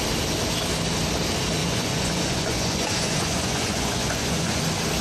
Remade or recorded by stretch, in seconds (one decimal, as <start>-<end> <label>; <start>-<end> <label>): 0.0-1.6 recorded; 1.6-4.6 remade; 4.6-5.0 recorded